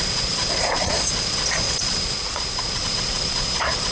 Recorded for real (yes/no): no